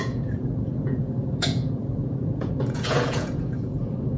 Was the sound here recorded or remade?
remade